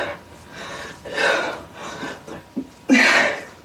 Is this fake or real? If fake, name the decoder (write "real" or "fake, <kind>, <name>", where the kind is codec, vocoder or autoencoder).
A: real